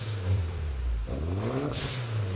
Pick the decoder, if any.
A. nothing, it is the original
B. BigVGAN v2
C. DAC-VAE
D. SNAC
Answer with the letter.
B